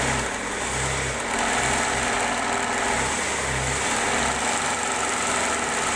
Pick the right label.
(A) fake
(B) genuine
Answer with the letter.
B